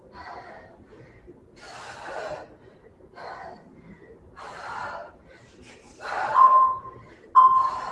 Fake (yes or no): yes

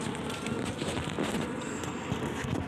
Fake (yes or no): no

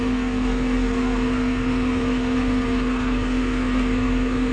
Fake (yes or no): yes